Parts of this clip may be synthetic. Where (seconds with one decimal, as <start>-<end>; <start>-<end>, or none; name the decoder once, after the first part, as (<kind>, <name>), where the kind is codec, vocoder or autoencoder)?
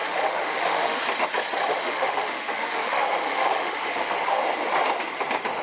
0.0-1.0 (autoencoder, DAC-VAE); 1.7-4.4